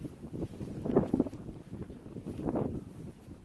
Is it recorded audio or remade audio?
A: recorded